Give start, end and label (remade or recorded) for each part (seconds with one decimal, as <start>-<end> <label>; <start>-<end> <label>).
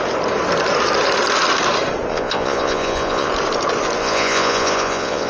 0.0-2.1 recorded; 2.1-3.3 remade; 3.3-4.0 recorded; 4.0-5.3 remade